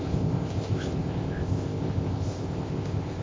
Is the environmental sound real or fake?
fake